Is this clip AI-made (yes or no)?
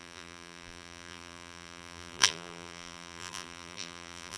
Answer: yes